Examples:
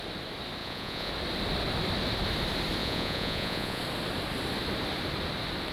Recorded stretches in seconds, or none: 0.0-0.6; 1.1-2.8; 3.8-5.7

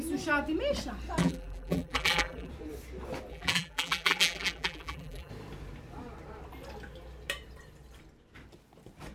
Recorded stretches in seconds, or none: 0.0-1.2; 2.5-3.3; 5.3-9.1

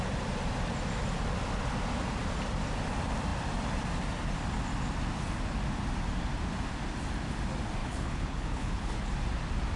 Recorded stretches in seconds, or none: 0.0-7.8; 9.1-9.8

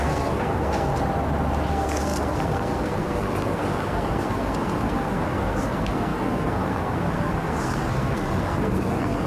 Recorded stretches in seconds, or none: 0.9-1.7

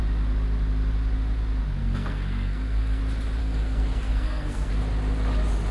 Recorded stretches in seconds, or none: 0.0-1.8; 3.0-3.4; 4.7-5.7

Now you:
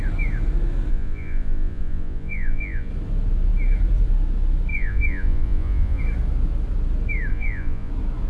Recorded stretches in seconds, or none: 0.0-0.9; 2.9-4.7; 6.0-7.3; 7.9-8.3